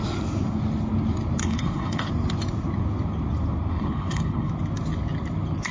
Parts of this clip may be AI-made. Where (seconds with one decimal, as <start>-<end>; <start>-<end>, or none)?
1.4-2.1; 3.7-4.5